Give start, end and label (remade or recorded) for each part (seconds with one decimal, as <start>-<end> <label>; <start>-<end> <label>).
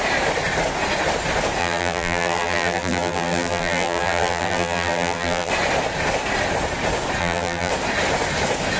0.0-1.6 recorded; 1.6-5.5 remade; 5.5-7.2 recorded; 7.2-7.7 remade; 7.7-8.8 recorded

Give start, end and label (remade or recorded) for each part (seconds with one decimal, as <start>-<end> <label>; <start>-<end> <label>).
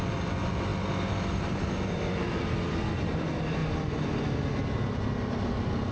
0.0-5.9 recorded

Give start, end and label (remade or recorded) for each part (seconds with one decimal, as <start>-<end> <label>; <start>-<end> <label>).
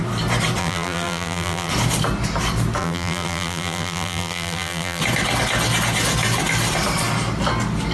0.0-0.6 recorded; 0.6-1.7 remade; 1.7-2.8 recorded; 2.8-5.0 remade; 5.0-7.9 recorded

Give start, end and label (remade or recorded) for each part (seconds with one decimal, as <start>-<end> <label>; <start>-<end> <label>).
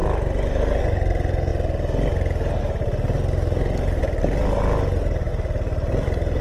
0.0-4.0 recorded; 4.0-4.6 remade; 4.6-5.3 recorded; 5.3-6.4 remade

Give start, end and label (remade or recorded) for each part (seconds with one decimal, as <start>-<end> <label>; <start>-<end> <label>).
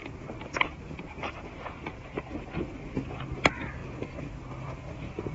0.0-3.8 recorded; 3.8-4.3 remade; 4.3-5.3 recorded